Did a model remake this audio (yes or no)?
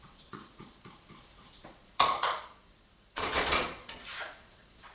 yes